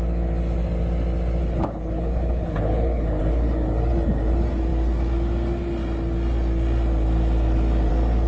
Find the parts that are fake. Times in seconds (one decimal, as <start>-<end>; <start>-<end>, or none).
1.4-3.2